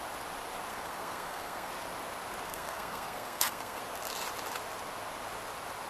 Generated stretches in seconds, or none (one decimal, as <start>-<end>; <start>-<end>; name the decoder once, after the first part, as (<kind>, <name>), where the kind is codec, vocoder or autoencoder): 0.7-1.7 (codec, SNAC); 2.5-3.8